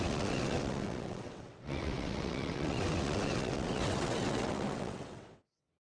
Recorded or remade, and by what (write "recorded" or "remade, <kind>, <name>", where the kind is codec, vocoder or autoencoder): remade, vocoder, WaveNeXt